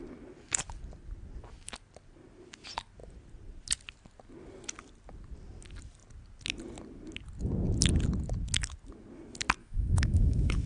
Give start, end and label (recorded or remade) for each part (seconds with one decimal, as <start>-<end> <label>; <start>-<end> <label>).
0.0-9.6 recorded; 9.6-10.7 remade

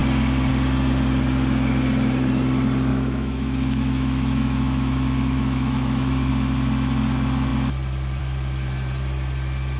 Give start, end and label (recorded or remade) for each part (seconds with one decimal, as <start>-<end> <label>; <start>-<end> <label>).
0.0-2.9 recorded; 2.9-6.3 remade; 6.3-9.8 recorded

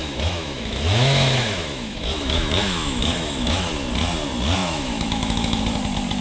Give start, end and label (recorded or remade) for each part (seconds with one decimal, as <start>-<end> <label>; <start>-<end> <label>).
0.0-3.7 remade; 3.7-4.6 recorded; 4.6-5.6 remade; 5.6-6.2 recorded

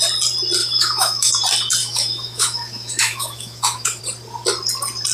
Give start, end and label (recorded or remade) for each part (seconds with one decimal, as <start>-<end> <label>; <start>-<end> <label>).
0.0-0.6 recorded; 0.6-1.3 remade; 1.3-1.8 recorded; 1.8-4.0 remade; 4.0-5.1 recorded

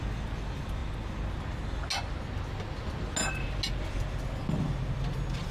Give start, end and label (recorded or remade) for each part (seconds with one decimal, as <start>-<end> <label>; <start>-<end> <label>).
0.0-5.5 recorded

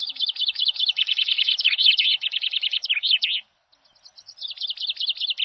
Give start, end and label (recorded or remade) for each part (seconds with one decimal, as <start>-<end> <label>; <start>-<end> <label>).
0.0-3.2 remade; 3.2-5.4 recorded

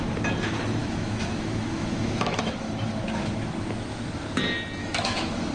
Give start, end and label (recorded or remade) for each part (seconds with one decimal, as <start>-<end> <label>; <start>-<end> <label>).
0.0-0.8 recorded; 0.8-4.1 remade; 4.1-4.8 recorded; 4.8-5.5 remade

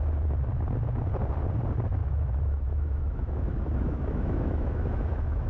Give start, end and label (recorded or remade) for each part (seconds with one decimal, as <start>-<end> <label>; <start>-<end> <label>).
0.0-2.0 recorded; 2.0-5.5 remade